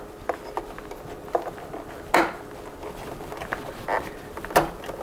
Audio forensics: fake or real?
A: real